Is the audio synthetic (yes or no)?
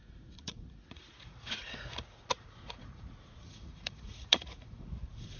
yes